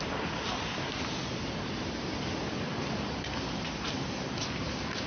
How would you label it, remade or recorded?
recorded